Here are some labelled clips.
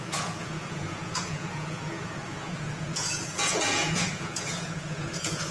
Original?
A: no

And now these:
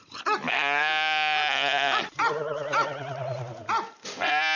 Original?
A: yes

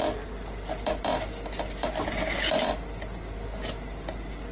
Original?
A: yes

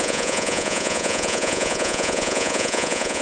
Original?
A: no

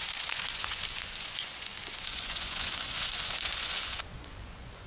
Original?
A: no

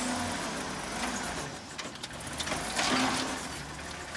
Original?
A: yes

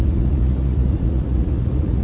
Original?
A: no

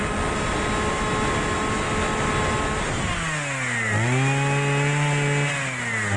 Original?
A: yes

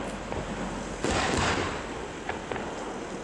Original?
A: yes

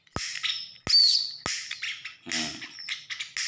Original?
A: yes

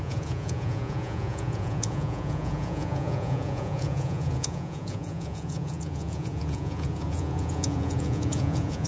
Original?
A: no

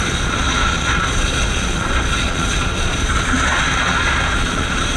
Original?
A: no